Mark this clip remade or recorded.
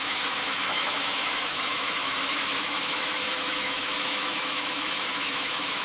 remade